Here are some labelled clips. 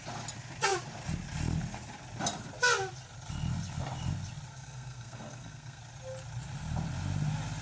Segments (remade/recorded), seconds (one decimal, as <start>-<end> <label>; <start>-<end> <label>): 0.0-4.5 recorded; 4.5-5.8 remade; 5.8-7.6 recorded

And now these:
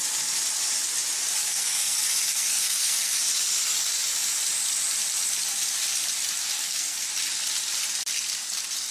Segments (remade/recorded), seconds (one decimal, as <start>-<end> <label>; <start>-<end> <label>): 0.0-1.4 recorded; 1.4-3.1 remade; 3.1-6.6 recorded; 6.6-7.1 remade; 7.1-8.9 recorded

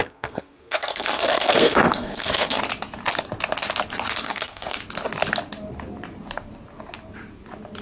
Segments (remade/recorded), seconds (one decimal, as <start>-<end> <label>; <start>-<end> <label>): 0.0-2.6 remade; 2.6-4.2 recorded; 4.2-4.8 remade; 4.8-7.8 recorded

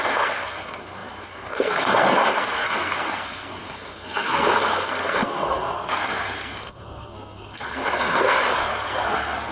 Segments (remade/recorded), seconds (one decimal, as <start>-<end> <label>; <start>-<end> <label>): 0.0-9.5 remade

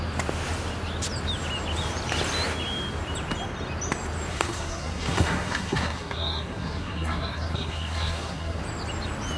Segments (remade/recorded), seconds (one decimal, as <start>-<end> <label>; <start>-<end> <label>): 0.0-4.3 recorded; 4.3-8.6 remade; 8.6-9.4 recorded

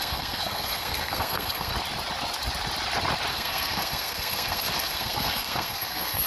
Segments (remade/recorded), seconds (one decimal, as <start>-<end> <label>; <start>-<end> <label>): 0.0-1.7 remade; 1.7-3.3 recorded; 3.3-6.3 remade

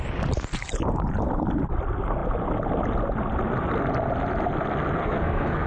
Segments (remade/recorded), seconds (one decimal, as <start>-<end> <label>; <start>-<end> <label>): 0.0-5.0 recorded; 5.0-5.7 remade